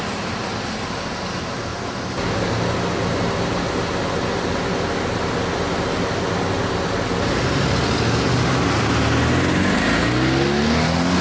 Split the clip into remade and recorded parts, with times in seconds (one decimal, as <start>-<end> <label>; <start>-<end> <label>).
0.0-11.2 recorded